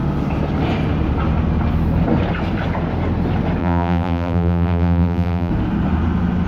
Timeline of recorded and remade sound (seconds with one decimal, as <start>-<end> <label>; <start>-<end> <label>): 0.0-3.6 recorded; 3.6-5.5 remade; 5.5-6.5 recorded